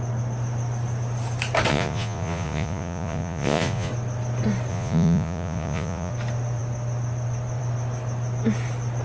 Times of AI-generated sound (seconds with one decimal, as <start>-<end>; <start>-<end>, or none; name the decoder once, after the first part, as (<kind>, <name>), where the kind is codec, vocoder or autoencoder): 1.7-3.9 (vocoder, Vocos); 4.7-6.1

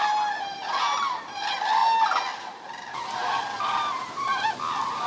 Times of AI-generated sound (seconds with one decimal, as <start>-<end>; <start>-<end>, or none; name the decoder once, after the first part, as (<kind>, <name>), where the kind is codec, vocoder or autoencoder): none